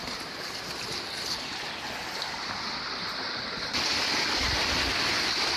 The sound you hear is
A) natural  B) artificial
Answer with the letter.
A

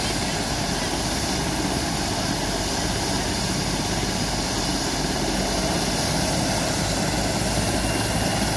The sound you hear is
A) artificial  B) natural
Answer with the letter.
B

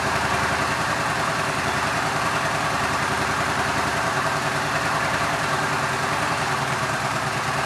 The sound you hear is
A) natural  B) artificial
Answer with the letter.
B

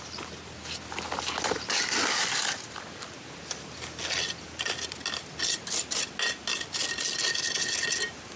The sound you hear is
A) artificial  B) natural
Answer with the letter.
B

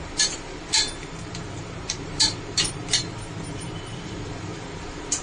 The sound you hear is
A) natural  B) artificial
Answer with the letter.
B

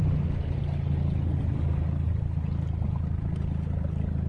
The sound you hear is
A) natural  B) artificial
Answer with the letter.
A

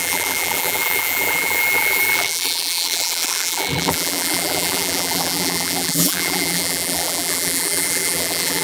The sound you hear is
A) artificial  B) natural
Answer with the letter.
A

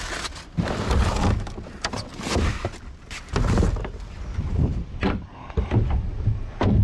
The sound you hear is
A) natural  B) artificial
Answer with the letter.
A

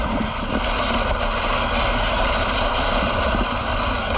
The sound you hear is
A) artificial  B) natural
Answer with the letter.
B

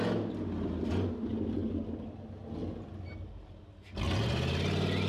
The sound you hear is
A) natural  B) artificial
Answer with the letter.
A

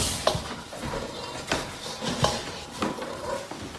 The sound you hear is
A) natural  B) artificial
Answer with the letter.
A